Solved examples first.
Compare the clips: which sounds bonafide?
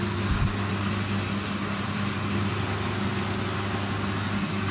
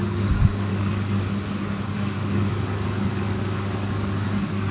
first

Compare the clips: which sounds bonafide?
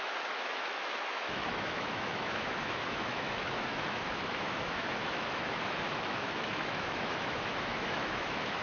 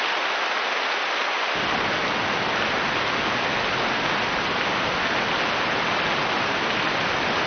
second